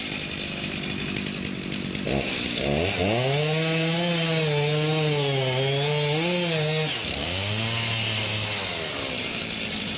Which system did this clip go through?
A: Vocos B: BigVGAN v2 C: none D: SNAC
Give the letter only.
C